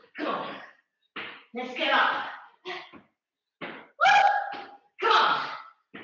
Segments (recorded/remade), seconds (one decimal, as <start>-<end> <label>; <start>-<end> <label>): 0.0-6.0 recorded